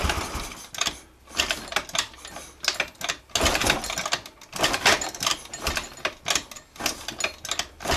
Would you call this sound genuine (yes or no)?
yes